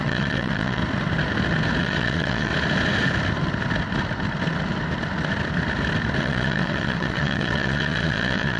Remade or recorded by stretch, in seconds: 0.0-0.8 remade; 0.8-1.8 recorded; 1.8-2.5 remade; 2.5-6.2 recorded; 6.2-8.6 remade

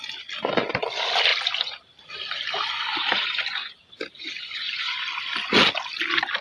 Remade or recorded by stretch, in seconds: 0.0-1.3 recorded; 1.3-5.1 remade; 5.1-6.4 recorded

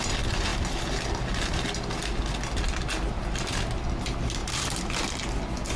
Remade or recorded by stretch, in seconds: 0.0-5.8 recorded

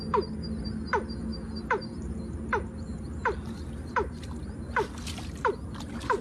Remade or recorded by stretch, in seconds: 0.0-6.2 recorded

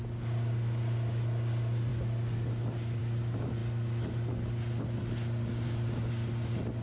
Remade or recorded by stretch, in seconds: 0.0-6.8 recorded

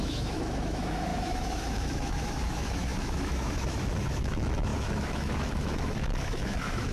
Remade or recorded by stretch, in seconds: 0.0-6.9 remade

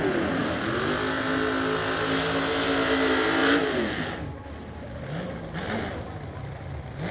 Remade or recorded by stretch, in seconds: 0.0-7.1 recorded